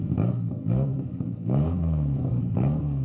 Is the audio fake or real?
fake